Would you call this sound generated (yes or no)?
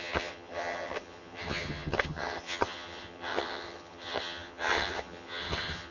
yes